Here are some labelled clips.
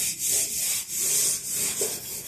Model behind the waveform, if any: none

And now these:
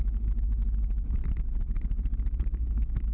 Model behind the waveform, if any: none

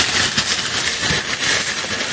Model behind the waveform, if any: none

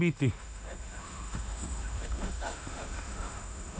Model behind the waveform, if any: autoencoder, DAC-VAE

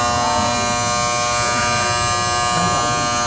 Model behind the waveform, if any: none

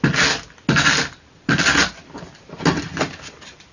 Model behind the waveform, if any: none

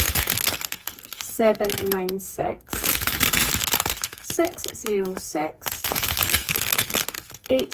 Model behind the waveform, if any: codec, SNAC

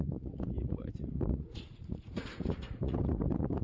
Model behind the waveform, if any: vocoder, Vocos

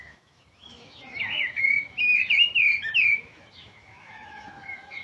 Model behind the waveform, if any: autoencoder, DAC-VAE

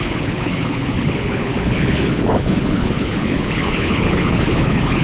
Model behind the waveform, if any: codec, HILCodec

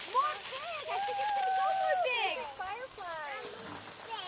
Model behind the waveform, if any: vocoder, BigVGAN v2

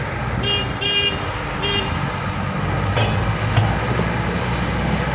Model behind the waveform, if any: none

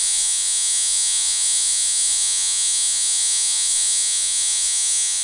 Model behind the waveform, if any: vocoder, Vocos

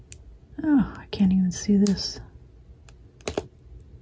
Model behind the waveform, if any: none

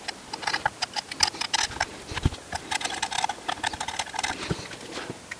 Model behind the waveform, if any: none